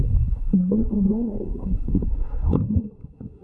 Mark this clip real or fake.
fake